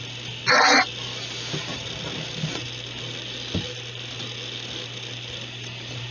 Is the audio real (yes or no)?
yes